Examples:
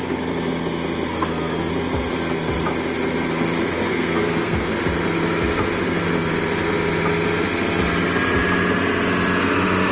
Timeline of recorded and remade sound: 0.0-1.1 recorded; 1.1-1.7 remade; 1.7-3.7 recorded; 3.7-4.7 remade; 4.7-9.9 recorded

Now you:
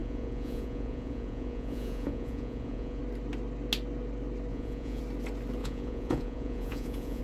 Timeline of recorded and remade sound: 0.0-3.0 remade; 3.0-4.5 recorded; 4.5-5.0 remade; 5.0-5.6 recorded; 5.6-7.2 remade

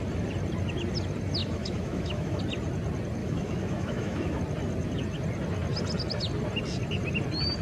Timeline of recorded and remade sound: 0.0-1.4 recorded; 1.4-2.4 remade; 2.4-3.2 recorded; 3.2-4.4 remade; 4.4-7.6 recorded

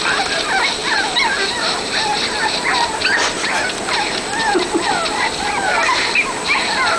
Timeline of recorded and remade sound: 0.0-7.0 remade

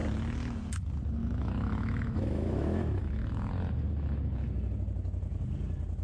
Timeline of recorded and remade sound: 0.0-1.2 recorded; 1.2-3.5 remade; 3.5-6.0 recorded

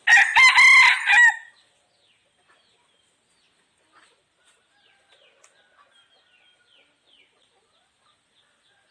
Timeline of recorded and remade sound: 0.0-8.9 recorded